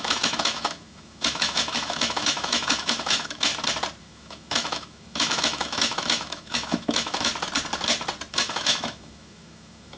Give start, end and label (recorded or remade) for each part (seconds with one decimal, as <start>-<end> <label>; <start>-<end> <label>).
0.0-3.5 remade; 3.5-4.0 recorded; 4.0-7.3 remade; 7.3-8.3 recorded; 8.3-10.0 remade